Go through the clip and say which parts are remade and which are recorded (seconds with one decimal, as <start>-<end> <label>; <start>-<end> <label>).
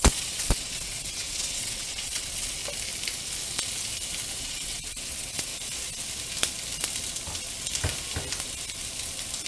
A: 0.0-2.6 remade; 2.6-4.4 recorded; 4.4-5.5 remade; 5.5-9.5 recorded